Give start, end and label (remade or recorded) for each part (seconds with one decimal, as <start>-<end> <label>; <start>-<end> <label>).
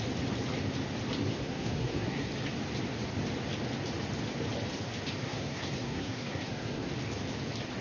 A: 0.0-1.4 recorded; 1.4-2.3 remade; 2.3-5.2 recorded; 5.2-6.9 remade; 6.9-7.8 recorded